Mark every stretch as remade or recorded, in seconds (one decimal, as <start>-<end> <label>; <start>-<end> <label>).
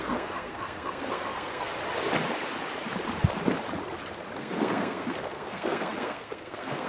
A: 0.0-1.7 remade; 1.7-4.4 recorded; 4.4-6.9 remade